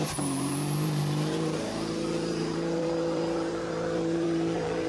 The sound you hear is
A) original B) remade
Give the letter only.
B